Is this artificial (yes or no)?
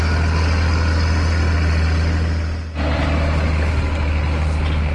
no